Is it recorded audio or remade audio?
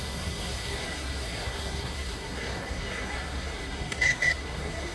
remade